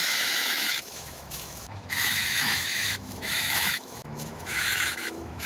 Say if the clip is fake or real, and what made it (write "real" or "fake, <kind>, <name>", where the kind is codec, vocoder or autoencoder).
fake, autoencoder, DAC-VAE